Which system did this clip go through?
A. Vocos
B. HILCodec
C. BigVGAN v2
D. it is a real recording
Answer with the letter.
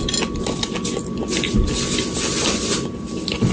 D